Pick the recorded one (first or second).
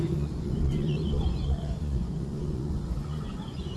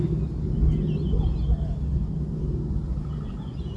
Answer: second